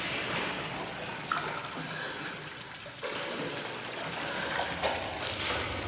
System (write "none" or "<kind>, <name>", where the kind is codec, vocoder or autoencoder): none